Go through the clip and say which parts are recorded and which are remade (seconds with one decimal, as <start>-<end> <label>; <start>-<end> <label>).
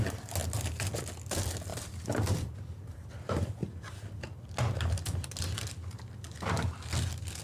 0.0-1.7 recorded; 1.7-2.7 remade; 2.7-7.4 recorded